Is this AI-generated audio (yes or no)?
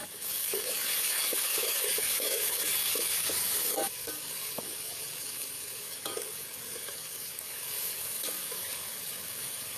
yes